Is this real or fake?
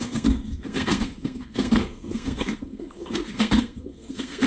fake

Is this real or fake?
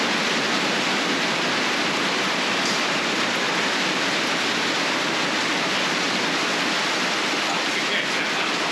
real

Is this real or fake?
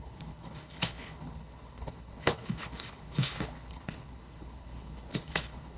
fake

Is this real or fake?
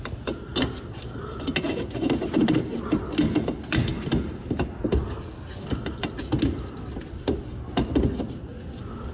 real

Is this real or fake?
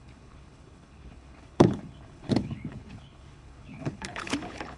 fake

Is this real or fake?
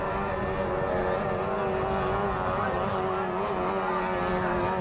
real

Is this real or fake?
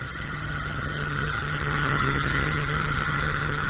fake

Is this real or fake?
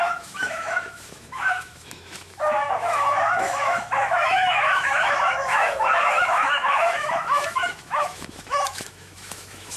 fake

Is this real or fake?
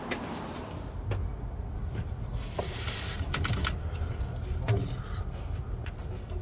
real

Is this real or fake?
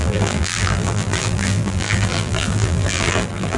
fake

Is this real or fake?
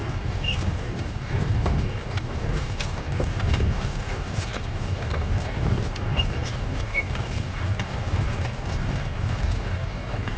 fake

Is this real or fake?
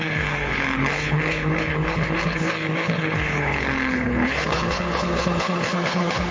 fake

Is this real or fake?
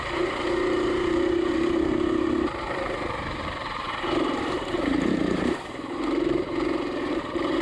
fake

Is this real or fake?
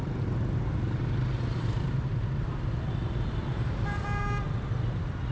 real